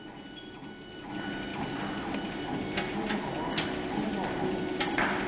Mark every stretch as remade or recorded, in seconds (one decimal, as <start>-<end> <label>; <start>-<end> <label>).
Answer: 0.0-5.3 recorded